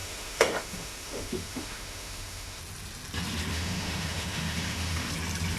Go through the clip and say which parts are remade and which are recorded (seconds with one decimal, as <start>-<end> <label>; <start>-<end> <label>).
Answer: 0.0-2.6 remade; 2.6-3.5 recorded; 3.5-5.1 remade; 5.1-5.6 recorded